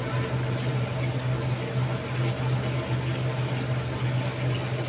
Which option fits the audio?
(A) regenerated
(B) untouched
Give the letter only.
B